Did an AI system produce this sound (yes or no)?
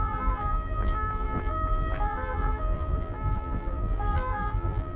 yes